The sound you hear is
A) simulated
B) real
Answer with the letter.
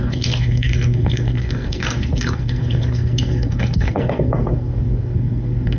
A